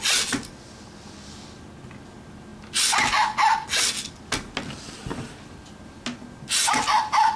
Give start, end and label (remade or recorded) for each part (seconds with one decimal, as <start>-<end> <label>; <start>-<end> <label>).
0.0-7.4 recorded